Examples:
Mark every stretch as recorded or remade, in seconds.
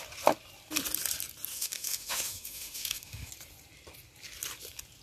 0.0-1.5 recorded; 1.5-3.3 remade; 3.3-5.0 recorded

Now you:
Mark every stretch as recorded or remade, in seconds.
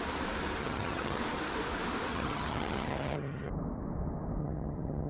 0.0-0.6 recorded; 0.6-1.2 remade; 1.2-2.1 recorded; 2.1-3.5 remade; 3.5-4.4 recorded; 4.4-5.1 remade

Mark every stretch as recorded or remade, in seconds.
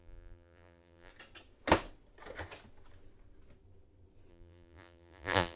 0.0-1.1 remade; 1.1-4.3 recorded; 4.3-5.6 remade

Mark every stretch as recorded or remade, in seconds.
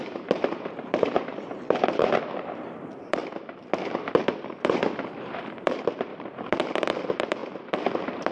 0.0-8.3 remade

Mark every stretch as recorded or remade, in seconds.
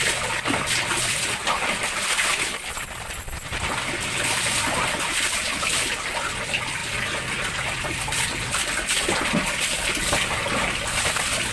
0.0-1.4 recorded; 1.4-2.3 remade; 2.3-11.5 recorded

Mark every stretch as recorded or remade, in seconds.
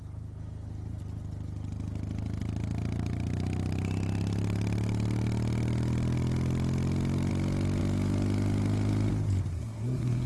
0.0-9.5 recorded; 9.5-10.3 remade